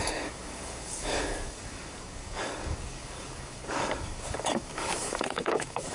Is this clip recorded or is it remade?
remade